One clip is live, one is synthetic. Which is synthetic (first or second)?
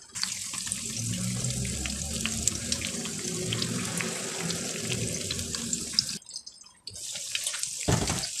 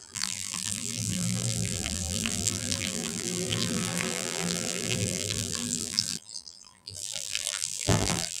second